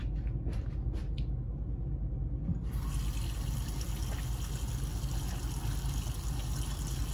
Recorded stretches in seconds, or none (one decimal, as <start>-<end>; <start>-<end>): 0.0-7.1